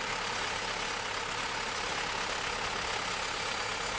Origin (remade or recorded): recorded